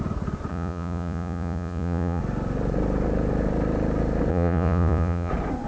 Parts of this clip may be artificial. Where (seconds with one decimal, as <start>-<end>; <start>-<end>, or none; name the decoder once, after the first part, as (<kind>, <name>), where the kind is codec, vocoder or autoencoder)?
0.5-2.2 (vocoder, Vocos); 4.3-5.3